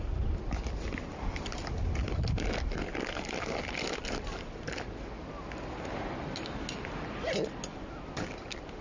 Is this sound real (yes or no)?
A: yes